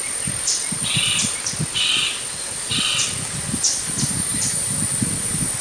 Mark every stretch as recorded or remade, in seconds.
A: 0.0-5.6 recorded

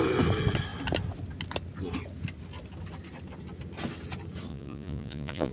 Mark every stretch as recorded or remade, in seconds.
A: 0.0-4.5 recorded; 4.5-5.5 remade